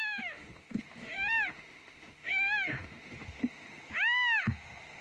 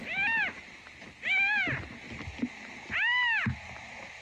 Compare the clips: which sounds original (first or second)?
second